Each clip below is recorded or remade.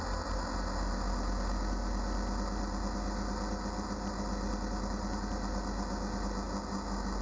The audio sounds recorded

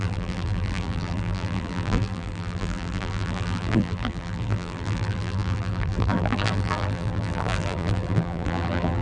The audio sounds remade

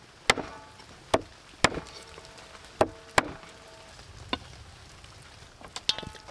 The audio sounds recorded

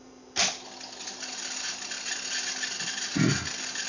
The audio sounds recorded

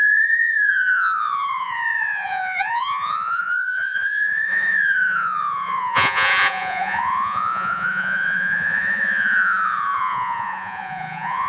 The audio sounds remade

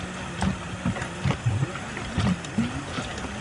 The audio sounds recorded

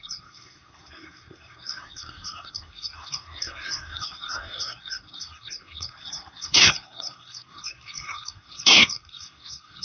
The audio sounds remade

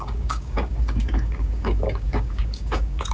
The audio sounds remade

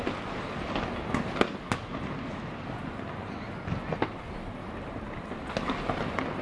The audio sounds recorded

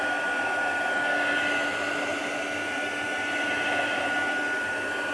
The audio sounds recorded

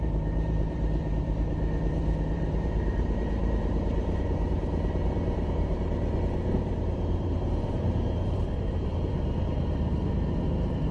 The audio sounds remade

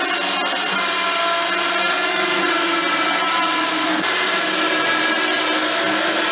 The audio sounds recorded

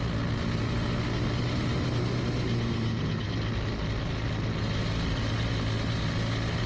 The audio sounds recorded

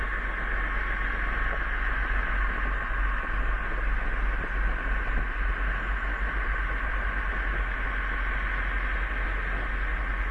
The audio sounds recorded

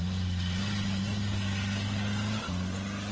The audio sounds recorded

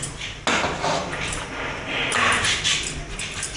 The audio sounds recorded